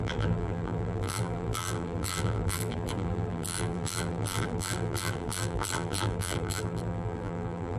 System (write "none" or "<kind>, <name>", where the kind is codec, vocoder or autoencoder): vocoder, BigVGAN v2